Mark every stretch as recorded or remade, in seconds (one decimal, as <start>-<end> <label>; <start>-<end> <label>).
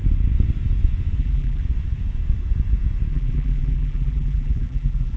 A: 0.0-1.2 recorded; 1.2-1.6 remade; 1.6-3.1 recorded; 3.1-5.2 remade